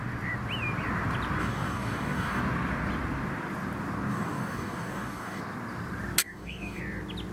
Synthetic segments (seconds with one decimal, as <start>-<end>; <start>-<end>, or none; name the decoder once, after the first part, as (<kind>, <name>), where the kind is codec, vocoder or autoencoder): 1.4-2.4 (codec, DAC); 4.1-5.4; 6.2-6.8